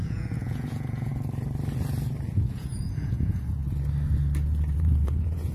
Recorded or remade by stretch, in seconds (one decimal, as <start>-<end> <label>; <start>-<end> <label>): 0.0-1.1 remade; 1.1-2.3 recorded; 2.3-3.6 remade; 3.6-4.7 recorded; 4.7-5.5 remade